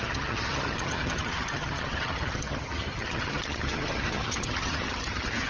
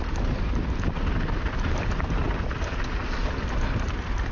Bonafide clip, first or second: second